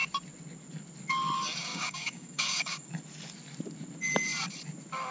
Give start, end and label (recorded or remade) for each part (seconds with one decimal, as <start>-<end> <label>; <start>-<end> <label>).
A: 0.0-1.7 recorded; 1.7-2.9 remade; 2.9-5.1 recorded